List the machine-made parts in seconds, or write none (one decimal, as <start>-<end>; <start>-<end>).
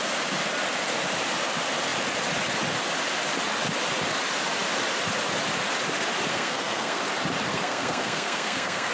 6.3-7.0; 7.5-8.9